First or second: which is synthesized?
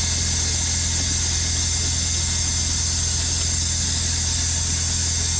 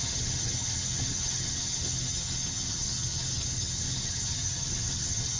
second